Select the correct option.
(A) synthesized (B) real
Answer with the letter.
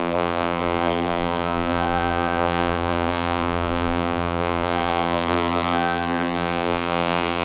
A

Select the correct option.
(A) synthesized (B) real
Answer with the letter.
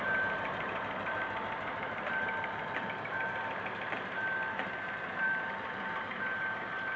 A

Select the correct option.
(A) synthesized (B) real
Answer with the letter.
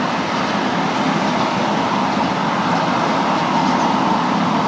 B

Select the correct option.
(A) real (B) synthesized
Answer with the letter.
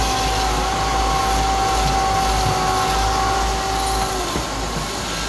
A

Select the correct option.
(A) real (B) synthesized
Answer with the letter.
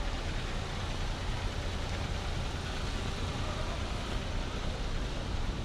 A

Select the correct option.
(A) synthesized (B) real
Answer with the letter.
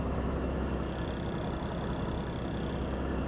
B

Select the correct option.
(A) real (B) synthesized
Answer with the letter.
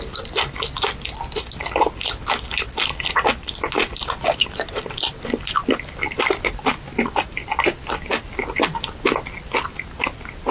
A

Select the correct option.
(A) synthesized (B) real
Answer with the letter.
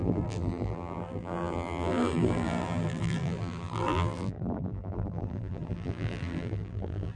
A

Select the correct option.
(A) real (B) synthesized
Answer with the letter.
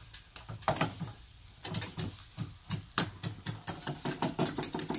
B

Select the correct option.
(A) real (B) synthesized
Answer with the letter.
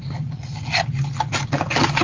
A